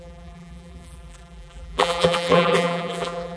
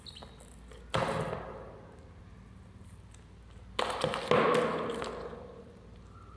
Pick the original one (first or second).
second